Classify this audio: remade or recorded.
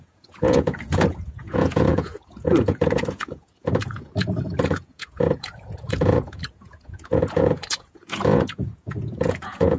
remade